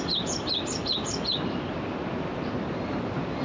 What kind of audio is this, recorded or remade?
recorded